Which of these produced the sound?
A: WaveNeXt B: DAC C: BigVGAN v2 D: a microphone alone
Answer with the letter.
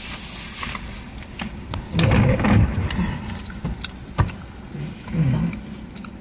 D